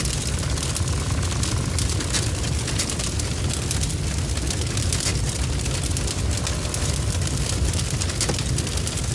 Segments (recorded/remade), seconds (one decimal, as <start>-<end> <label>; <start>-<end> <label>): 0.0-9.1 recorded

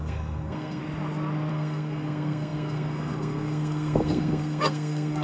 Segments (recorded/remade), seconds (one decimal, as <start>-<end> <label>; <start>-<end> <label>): 0.0-0.8 remade; 0.8-1.5 recorded; 1.5-5.2 remade

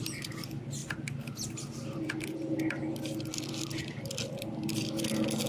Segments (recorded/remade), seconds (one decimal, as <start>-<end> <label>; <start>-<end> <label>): 0.0-5.5 recorded

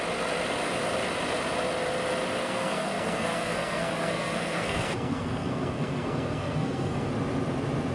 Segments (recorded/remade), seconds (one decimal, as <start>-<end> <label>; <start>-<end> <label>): 0.0-2.4 recorded; 2.4-7.1 remade; 7.1-7.9 recorded

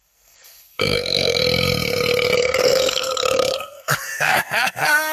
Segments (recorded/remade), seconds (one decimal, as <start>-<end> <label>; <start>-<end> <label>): 0.0-1.4 remade; 1.4-2.4 recorded; 2.4-5.1 remade